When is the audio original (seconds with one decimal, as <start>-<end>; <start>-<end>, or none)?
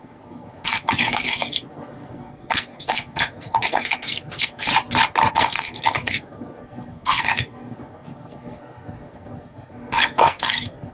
4.7-5.3